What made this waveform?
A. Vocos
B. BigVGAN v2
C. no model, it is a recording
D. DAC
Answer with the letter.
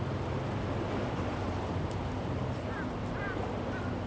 C